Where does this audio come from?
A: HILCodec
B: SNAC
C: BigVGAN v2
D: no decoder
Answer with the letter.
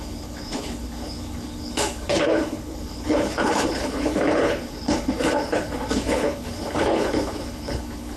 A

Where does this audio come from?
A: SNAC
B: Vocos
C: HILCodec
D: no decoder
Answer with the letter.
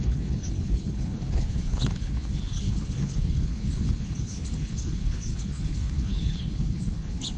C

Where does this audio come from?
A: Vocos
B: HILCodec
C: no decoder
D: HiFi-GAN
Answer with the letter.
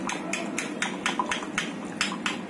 C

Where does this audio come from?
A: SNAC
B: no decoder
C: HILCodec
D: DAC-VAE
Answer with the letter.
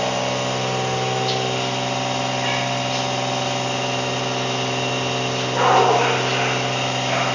B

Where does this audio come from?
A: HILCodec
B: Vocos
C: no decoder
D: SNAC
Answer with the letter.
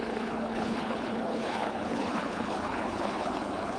A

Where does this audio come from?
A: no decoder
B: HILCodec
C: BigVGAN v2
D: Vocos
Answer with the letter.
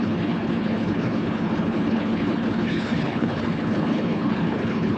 B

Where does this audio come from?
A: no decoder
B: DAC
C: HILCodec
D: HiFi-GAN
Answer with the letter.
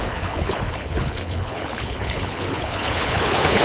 C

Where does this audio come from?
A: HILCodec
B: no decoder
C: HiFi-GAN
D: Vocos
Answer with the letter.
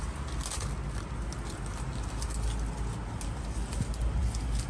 B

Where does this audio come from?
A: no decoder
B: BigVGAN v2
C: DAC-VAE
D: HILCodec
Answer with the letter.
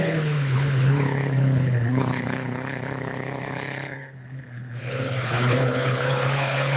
D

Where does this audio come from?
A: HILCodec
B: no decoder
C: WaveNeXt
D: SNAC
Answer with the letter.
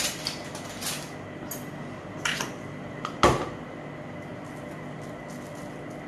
B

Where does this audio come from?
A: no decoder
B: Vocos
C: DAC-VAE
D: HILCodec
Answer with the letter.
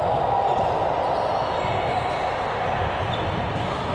A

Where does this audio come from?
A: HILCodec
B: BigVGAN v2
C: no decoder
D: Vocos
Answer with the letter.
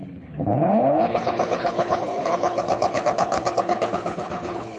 A